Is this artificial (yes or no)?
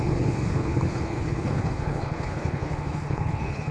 yes